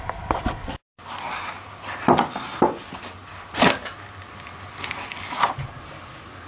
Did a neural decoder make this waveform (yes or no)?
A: no